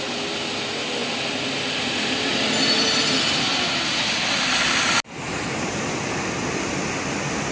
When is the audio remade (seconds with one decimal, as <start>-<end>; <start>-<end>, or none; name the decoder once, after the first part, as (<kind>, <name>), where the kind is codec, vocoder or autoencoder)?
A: none